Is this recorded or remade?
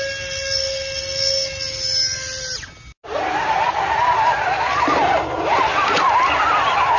recorded